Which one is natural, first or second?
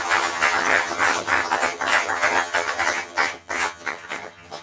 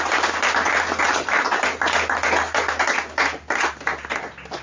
second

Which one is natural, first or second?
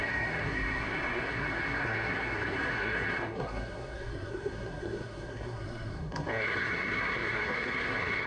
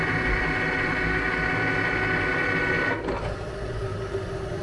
second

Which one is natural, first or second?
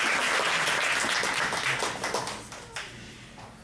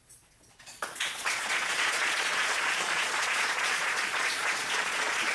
first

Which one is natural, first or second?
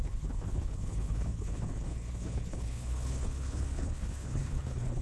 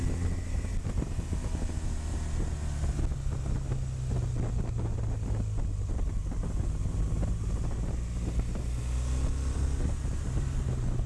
second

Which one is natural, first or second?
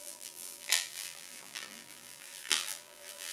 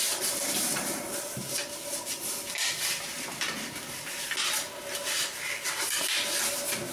second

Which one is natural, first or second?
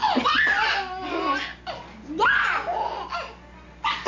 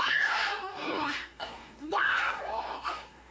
first